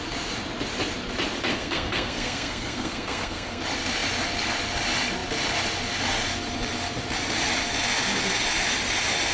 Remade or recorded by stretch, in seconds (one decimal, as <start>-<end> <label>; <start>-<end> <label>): 0.0-1.5 recorded; 1.5-3.6 remade; 3.6-9.3 recorded